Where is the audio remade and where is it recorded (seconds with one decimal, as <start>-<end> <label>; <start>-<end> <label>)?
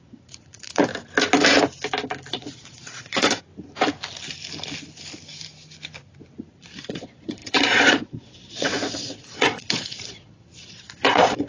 0.0-0.9 remade; 0.9-2.3 recorded; 2.3-3.4 remade; 3.4-6.5 recorded; 6.5-11.5 remade